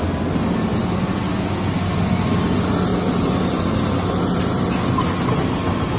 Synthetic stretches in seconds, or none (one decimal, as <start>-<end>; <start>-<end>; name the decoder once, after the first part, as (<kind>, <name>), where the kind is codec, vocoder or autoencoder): none